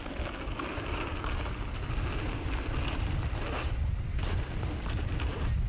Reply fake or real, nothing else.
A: real